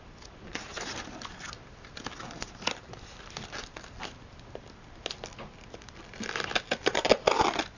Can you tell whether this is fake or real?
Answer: real